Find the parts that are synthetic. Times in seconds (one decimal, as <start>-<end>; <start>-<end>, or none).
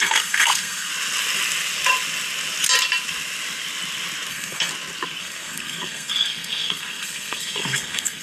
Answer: 0.0-0.9; 4.3-4.7; 5.2-8.2